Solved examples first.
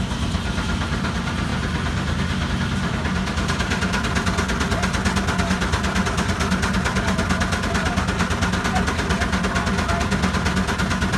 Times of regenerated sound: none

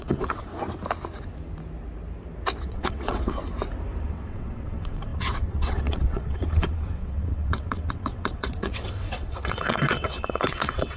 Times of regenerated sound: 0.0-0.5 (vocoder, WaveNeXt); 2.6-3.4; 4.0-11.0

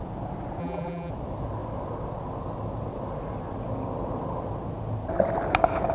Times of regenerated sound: 0.6-1.1 (vocoder, BigVGAN v2)

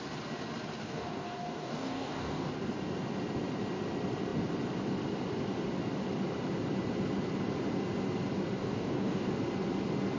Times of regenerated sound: 0.8-2.5 (codec, DAC); 8.6-9.3